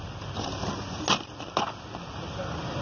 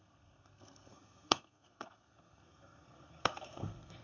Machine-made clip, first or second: second